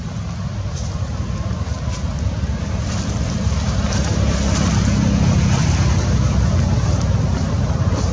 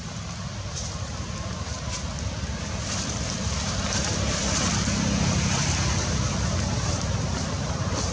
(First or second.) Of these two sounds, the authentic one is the first